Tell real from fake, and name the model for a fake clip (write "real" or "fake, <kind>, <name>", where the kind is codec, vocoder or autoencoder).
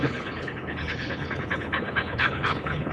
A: fake, codec, HILCodec